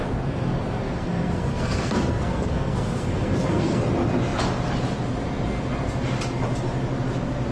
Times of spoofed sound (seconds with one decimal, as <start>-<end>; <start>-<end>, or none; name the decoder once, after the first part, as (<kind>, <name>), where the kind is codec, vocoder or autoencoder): 0.0-3.8 (codec, SNAC)